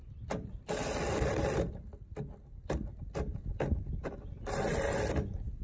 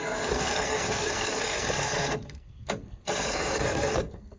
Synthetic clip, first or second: second